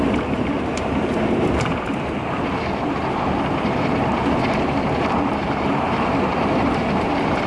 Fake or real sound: fake